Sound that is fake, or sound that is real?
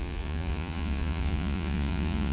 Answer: fake